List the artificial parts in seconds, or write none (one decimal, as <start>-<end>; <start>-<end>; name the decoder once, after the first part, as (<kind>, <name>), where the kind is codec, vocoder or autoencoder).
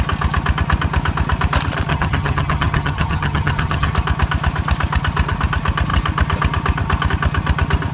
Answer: 1.9-3.9 (vocoder, HiFi-GAN)